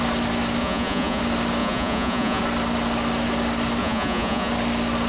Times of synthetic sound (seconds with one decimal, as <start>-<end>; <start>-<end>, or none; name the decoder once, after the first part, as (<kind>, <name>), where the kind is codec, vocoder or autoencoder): 0.6-1.2 (vocoder, Vocos); 1.6-2.4; 3.8-4.5